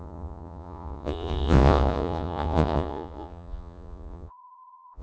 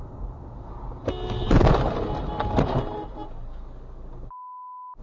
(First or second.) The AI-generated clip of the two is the first